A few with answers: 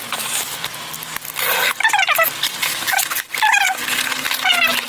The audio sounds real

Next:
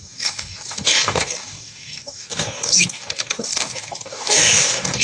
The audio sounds fake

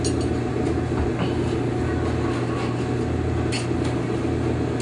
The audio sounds real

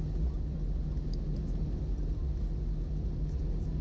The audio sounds real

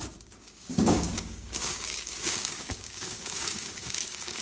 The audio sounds fake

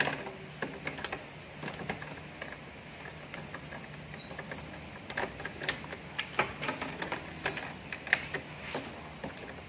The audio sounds real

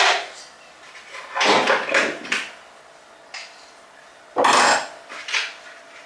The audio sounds real